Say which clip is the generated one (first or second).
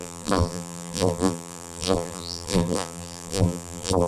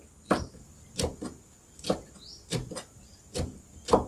first